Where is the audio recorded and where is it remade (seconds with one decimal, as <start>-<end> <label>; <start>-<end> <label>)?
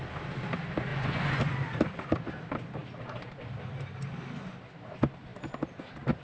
0.0-0.9 recorded; 0.9-1.4 remade; 1.4-6.2 recorded